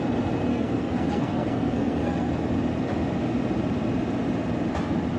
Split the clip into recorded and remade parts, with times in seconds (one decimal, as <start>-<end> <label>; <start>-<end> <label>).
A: 0.0-0.5 recorded; 0.5-2.3 remade; 2.3-5.2 recorded